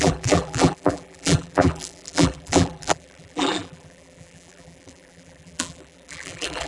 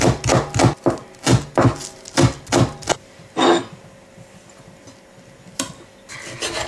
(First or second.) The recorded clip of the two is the second